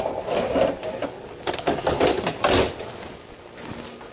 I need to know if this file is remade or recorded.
recorded